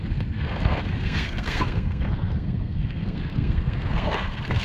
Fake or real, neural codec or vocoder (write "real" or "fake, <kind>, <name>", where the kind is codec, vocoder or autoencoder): fake, codec, SNAC